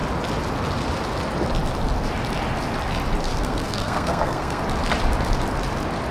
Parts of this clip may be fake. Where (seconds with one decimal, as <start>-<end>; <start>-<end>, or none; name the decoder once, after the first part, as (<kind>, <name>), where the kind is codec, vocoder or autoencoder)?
3.2-4.6 (codec, SNAC)